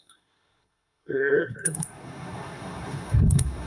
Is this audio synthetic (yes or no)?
yes